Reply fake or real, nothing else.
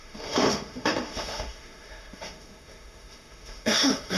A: fake